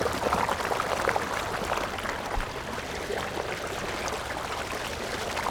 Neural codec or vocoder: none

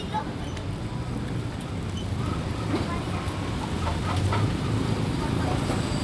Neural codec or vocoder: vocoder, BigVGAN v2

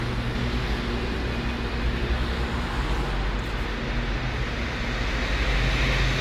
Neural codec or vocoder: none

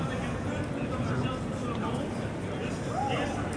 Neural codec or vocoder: none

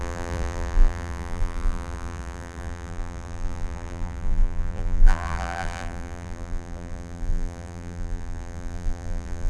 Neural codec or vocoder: vocoder, BigVGAN v2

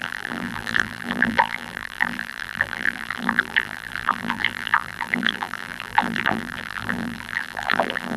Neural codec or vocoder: vocoder, BigVGAN v2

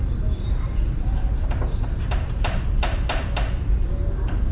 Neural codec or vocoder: none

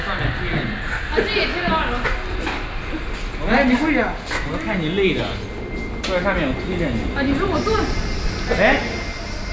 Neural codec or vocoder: none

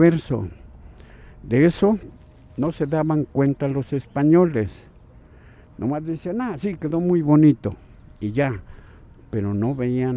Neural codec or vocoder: none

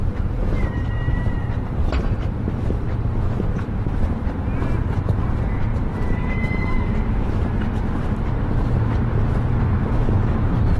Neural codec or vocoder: vocoder, BigVGAN v2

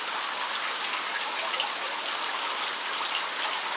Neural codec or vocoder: none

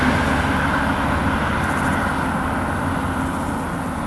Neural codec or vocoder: none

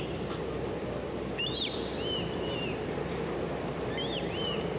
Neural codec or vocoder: none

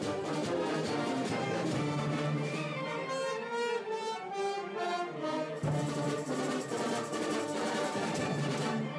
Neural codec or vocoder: vocoder, BigVGAN v2